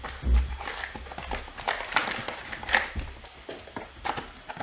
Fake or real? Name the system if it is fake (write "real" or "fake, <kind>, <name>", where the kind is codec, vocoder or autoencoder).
real